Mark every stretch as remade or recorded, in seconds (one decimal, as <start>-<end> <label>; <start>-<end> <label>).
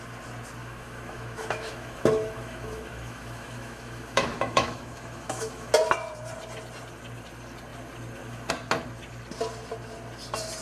0.0-0.6 recorded; 0.6-5.7 remade; 5.7-10.6 recorded